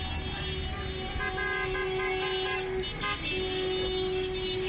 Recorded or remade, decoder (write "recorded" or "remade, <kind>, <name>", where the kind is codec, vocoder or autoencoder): recorded